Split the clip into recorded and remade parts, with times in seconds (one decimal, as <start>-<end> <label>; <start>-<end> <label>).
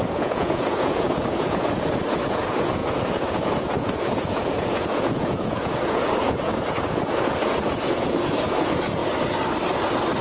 0.0-9.0 remade; 9.0-10.2 recorded